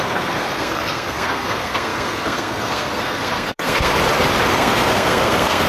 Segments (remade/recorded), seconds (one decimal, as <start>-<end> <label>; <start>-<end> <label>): 0.0-3.9 remade; 3.9-4.5 recorded; 4.5-5.7 remade

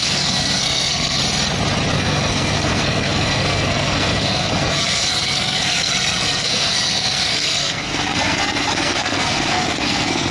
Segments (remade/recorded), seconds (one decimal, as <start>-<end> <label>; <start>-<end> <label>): 0.0-1.2 remade; 1.2-1.9 recorded; 1.9-10.3 remade

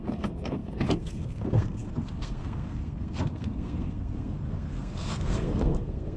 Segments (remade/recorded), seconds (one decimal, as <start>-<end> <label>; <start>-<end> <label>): 0.0-6.2 remade

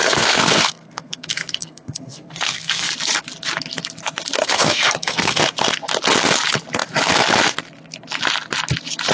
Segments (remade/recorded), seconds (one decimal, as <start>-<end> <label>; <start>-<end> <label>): 0.0-2.9 remade; 2.9-4.4 recorded; 4.4-5.4 remade; 5.4-9.1 recorded

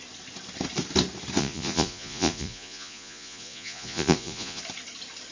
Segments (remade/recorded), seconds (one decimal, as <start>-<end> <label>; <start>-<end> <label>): 0.0-1.4 recorded; 1.4-4.6 remade; 4.6-5.3 recorded

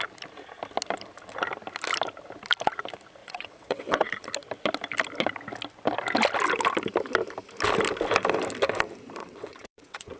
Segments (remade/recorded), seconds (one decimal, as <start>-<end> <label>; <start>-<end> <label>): 0.0-3.2 recorded; 3.2-4.1 remade; 4.1-9.2 recorded; 9.2-10.2 remade

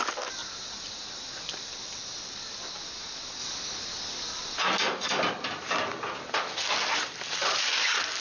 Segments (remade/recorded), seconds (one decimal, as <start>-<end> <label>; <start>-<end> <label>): 0.0-8.2 recorded